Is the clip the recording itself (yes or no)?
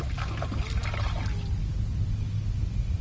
yes